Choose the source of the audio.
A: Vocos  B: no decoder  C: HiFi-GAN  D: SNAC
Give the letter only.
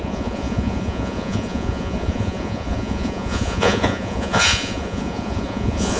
A